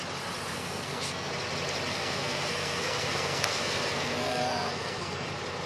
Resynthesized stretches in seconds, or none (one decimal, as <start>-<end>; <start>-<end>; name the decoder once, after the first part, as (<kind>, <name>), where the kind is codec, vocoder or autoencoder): 0.5-1.3 (codec, SNAC); 1.9-5.3